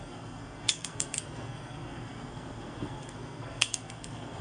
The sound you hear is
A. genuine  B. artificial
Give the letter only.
B